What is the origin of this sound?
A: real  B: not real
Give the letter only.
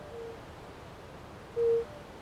A